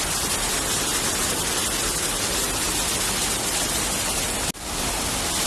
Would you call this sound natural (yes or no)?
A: yes